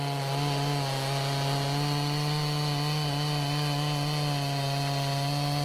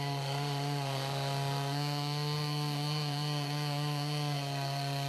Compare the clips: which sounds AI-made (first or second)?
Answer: second